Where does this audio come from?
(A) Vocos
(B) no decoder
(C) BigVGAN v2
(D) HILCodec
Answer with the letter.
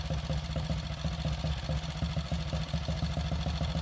B